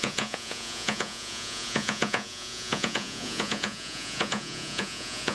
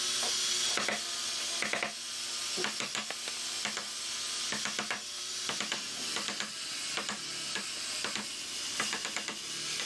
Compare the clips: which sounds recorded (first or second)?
second